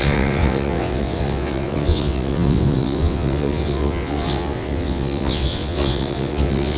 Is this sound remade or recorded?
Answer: remade